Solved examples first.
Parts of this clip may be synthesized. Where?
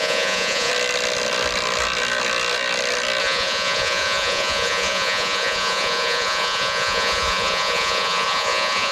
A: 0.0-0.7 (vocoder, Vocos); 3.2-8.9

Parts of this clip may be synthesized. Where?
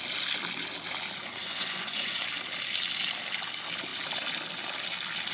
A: 1.4-2.2 (vocoder, Vocos)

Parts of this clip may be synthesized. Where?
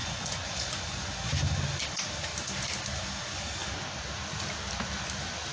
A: 0.0-1.3 (vocoder, Vocos)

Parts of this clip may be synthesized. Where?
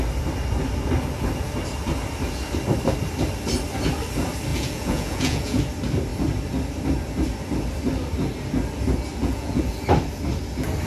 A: 4.5-5.6 (vocoder, Vocos); 9.2-9.7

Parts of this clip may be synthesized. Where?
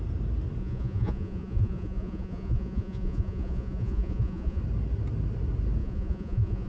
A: 0.6-4.6 (vocoder, Vocos); 5.8-6.7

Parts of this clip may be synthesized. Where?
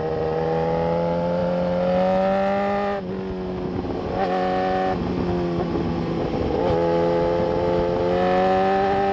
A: none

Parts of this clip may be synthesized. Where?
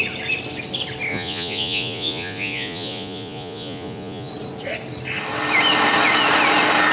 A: 1.1-4.3 (vocoder, Vocos)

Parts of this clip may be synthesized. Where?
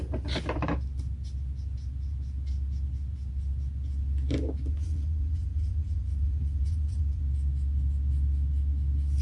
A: 4.7-7.2 (vocoder, Vocos)